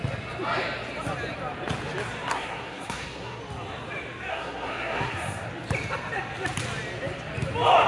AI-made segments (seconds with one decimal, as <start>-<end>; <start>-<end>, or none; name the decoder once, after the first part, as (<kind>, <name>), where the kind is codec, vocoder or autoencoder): 2.3-3.4 (codec, SNAC); 4.3-5.5